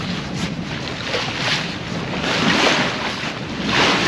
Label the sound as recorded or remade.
recorded